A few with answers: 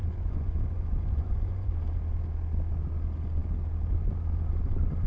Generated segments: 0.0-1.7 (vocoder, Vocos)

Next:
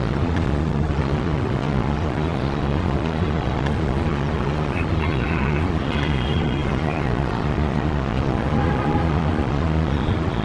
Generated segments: 0.0-10.4 (vocoder, Vocos)